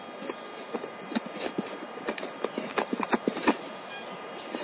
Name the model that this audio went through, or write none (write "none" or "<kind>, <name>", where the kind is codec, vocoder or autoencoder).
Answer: none